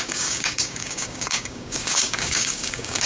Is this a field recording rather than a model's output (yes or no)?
no